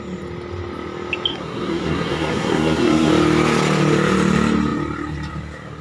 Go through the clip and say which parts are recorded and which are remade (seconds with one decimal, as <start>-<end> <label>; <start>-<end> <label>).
0.0-1.3 recorded; 1.3-3.1 remade; 3.1-5.8 recorded